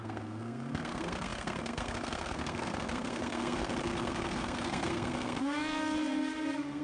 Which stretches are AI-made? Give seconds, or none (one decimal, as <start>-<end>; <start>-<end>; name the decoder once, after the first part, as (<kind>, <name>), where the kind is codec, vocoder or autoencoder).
0.0-6.8 (codec, SNAC)